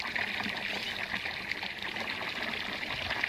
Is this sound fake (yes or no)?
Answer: no